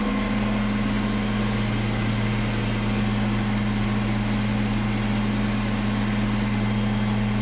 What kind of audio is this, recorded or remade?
recorded